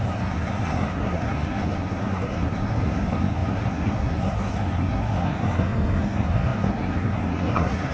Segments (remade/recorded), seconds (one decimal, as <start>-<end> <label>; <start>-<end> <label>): 0.0-7.9 remade